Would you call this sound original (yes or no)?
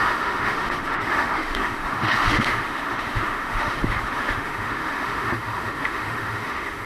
no